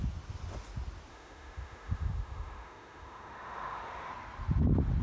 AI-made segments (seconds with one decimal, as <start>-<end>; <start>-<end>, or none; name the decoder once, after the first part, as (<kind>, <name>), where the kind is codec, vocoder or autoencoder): 1.1-4.1 (autoencoder, DAC-VAE)